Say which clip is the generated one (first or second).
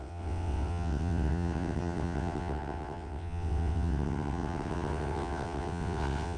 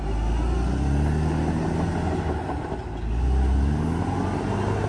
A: first